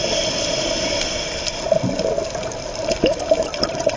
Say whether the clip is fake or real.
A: real